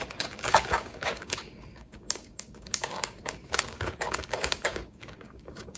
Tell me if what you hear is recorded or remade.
remade